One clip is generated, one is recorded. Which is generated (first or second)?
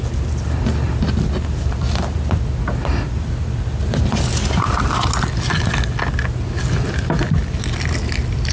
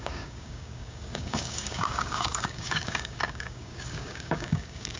second